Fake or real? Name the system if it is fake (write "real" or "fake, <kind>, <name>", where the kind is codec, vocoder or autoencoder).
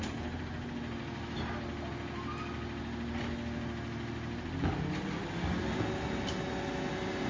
real